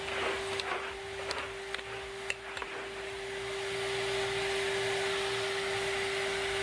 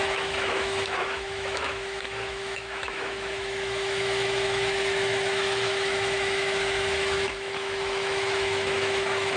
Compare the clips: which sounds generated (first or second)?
second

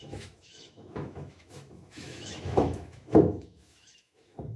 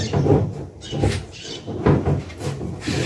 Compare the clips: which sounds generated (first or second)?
first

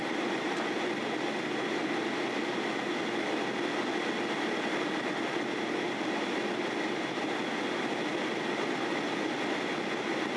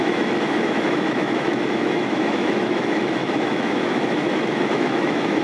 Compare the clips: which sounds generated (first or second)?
second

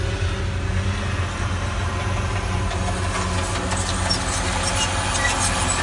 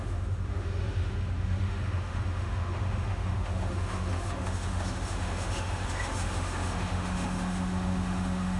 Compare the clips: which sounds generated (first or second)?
second